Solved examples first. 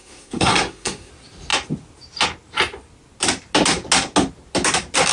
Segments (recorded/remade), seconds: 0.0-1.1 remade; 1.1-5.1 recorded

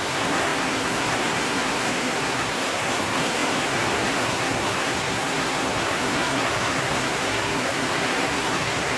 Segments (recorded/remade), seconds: 0.0-9.0 remade